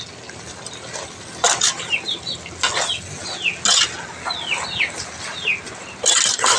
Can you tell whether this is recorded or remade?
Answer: recorded